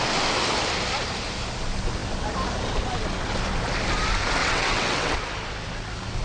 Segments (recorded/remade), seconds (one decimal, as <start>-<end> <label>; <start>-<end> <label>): 0.0-4.4 recorded; 4.4-5.2 remade; 5.2-6.2 recorded

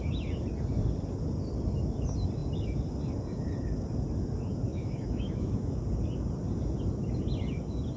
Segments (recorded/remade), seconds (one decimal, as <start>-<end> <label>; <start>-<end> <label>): 0.0-4.7 recorded; 4.7-5.8 remade; 5.8-8.0 recorded